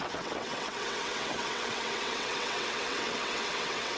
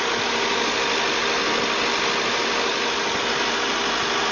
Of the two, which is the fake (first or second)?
first